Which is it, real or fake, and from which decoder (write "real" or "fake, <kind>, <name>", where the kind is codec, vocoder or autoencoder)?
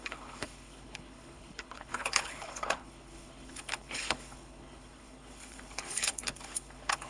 fake, codec, HILCodec